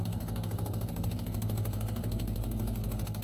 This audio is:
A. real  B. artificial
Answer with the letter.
B